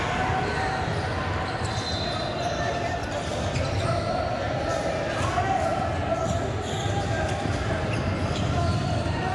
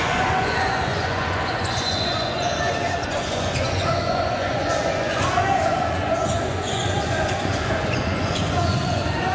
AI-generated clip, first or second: second